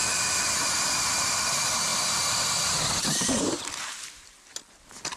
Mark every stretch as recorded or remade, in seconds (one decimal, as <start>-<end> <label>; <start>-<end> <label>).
0.0-1.9 remade; 1.9-5.2 recorded

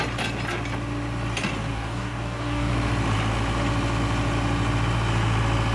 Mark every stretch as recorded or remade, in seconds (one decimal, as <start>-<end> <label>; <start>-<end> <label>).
0.0-1.7 recorded; 1.7-2.7 remade; 2.7-5.7 recorded

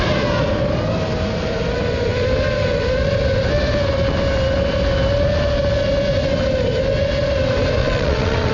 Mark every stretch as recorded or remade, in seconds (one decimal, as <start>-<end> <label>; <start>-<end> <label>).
0.0-7.8 recorded; 7.8-8.5 remade

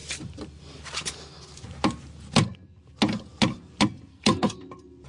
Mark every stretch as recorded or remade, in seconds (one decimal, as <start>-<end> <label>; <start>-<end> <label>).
0.0-4.1 recorded; 4.1-4.6 remade; 4.6-5.1 recorded

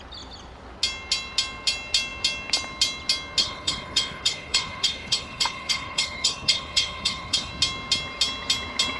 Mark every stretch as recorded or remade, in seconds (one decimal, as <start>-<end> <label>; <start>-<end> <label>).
0.0-3.4 recorded; 3.4-7.5 remade; 7.5-9.0 recorded

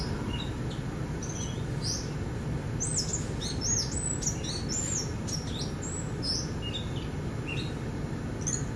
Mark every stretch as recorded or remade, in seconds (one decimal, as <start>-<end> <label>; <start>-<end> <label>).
0.0-8.8 recorded

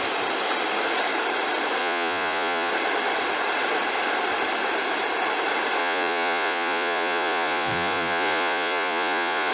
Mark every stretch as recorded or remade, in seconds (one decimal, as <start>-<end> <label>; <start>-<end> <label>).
0.0-1.8 recorded; 1.8-2.7 remade; 2.7-5.8 recorded; 5.8-9.5 remade

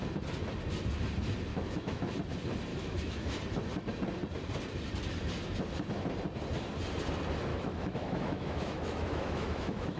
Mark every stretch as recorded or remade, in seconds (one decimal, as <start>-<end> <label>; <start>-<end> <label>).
0.0-1.5 recorded; 1.5-2.1 remade; 2.1-2.7 recorded; 2.7-3.4 remade; 3.4-7.5 recorded; 7.5-10.0 remade